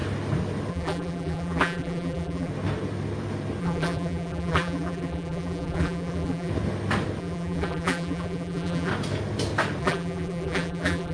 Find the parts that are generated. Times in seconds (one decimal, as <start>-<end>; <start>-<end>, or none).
0.7-2.5; 3.6-6.5; 7.2-8.9; 9.8-11.1